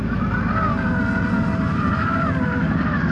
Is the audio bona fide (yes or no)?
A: yes